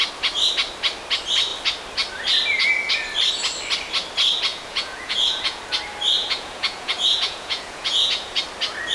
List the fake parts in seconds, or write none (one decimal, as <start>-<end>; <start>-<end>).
4.5-5.6; 6.2-8.4